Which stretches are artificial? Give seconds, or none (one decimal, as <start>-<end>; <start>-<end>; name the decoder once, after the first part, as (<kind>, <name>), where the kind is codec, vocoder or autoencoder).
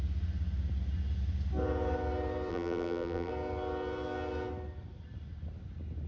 2.5-3.3 (vocoder, BigVGAN v2)